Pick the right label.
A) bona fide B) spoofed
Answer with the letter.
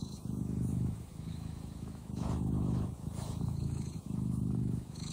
B